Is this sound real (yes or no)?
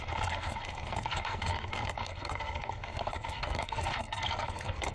no